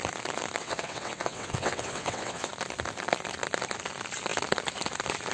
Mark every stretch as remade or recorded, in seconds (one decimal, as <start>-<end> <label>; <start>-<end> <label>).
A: 0.0-0.6 recorded; 0.6-2.5 remade; 2.5-5.3 recorded